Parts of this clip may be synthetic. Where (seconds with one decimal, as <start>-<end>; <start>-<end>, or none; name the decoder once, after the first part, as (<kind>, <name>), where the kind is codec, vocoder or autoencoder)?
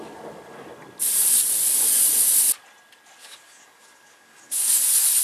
3.2-4.8 (codec, DAC)